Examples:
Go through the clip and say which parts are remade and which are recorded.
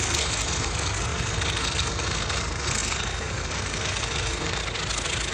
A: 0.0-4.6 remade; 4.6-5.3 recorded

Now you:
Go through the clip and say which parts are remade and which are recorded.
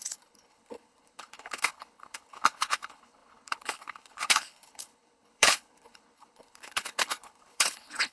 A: 0.0-8.1 remade